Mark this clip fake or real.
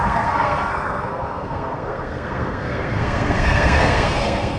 fake